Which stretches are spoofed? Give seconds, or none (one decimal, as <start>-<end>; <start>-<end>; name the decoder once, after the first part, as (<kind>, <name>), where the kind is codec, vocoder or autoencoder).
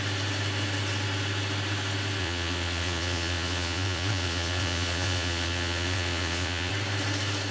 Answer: 2.2-6.7 (vocoder, Vocos)